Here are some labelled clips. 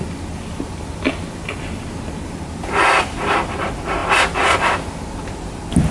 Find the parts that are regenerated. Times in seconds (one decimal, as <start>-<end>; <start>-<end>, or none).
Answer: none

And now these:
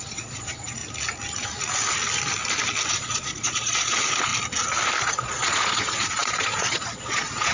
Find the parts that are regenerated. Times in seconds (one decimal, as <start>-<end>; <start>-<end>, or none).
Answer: 0.0-0.8; 2.9-4.3; 5.0-7.5

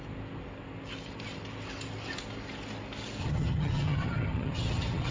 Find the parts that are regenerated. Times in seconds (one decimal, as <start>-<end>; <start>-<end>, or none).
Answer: 3.2-5.1